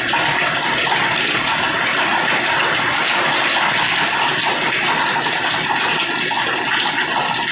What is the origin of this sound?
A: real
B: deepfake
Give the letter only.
A